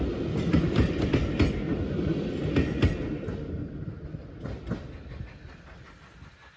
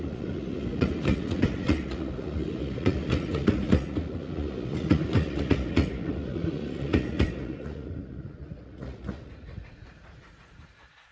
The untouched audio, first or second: first